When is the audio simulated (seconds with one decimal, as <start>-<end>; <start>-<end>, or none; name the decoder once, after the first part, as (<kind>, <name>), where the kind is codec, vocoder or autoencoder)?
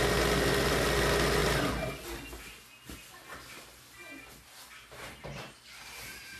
none